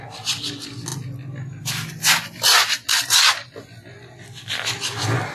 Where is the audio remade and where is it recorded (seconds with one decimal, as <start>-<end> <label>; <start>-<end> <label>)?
0.0-5.3 recorded